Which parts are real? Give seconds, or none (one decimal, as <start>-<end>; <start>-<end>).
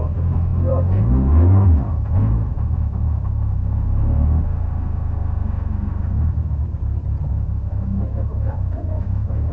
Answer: 6.6-7.3